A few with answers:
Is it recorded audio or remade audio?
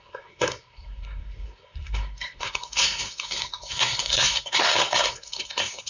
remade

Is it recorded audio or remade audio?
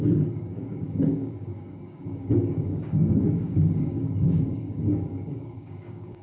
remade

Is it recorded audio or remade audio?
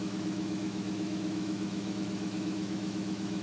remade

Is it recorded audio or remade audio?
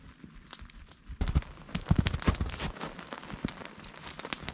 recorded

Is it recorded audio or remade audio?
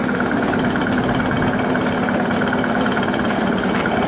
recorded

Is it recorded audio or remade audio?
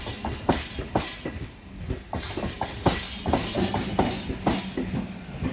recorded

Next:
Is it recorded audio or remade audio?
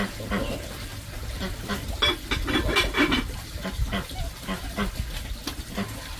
recorded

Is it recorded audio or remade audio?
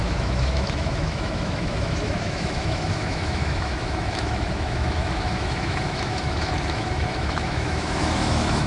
remade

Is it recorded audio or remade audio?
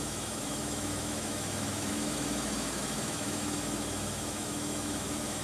remade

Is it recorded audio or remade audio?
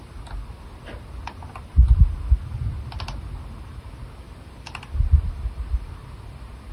recorded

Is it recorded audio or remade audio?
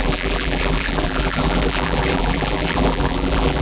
remade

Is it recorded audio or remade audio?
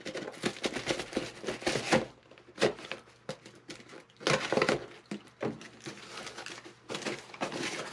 recorded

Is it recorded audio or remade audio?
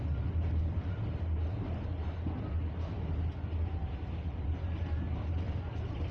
recorded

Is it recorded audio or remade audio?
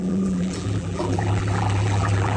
remade